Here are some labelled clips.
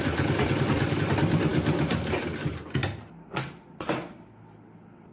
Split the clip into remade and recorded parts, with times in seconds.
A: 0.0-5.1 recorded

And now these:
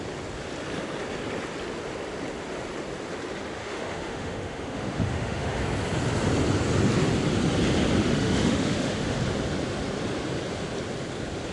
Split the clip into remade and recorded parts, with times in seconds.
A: 0.0-3.6 recorded; 3.6-5.6 remade; 5.6-8.0 recorded; 8.0-9.2 remade; 9.2-11.5 recorded

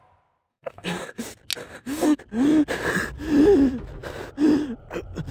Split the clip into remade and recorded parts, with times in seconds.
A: 0.0-0.5 recorded; 0.5-1.2 remade; 1.2-1.6 recorded; 1.6-2.2 remade; 2.2-5.3 recorded

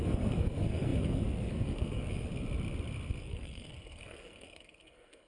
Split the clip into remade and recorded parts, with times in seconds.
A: 0.0-2.3 remade; 2.3-3.2 recorded; 3.2-5.3 remade